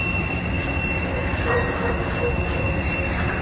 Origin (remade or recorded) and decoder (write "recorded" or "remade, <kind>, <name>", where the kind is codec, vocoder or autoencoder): recorded